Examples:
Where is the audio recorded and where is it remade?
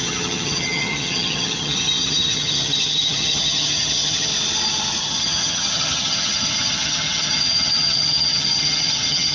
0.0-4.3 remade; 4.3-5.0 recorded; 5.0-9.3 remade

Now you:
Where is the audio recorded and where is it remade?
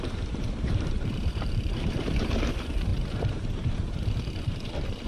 0.0-5.1 remade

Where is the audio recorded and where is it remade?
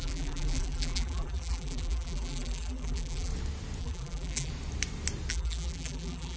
0.0-3.3 remade; 3.3-3.8 recorded; 3.8-4.5 remade; 4.5-5.3 recorded; 5.3-6.4 remade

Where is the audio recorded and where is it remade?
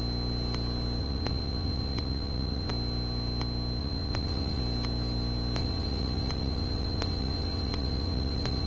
0.0-1.0 recorded; 1.0-2.7 remade; 2.7-3.8 recorded; 3.8-4.6 remade; 4.6-5.6 recorded; 5.6-8.7 remade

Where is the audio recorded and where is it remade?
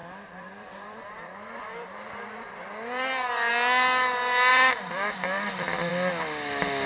0.0-3.5 remade; 3.5-4.5 recorded; 4.5-5.9 remade; 5.9-6.9 recorded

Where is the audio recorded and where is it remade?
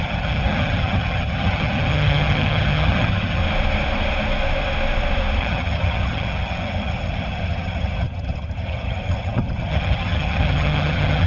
0.0-3.4 remade; 3.4-5.4 recorded; 5.4-11.3 remade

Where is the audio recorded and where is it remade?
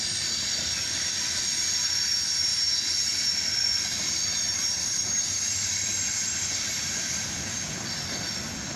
0.0-2.5 remade; 2.5-3.3 recorded; 3.3-8.8 remade